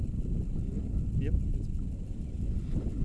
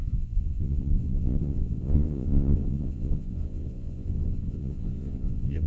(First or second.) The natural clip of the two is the first